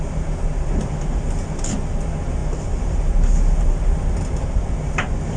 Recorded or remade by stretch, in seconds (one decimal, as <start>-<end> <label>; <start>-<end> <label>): 0.0-5.4 recorded